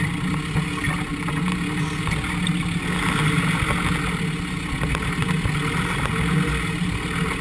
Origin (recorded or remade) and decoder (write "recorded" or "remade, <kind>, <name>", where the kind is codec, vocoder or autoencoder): recorded